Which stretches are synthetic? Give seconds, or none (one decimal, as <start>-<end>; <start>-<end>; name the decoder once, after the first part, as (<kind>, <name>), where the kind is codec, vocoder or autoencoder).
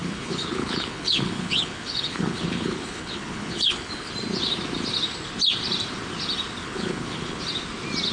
0.0-4.1 (codec, HILCodec); 6.6-7.4